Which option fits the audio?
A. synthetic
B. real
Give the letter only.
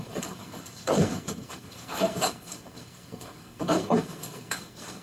A